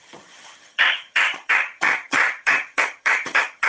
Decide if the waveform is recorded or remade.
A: remade